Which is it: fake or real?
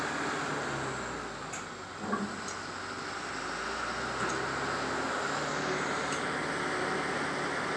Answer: real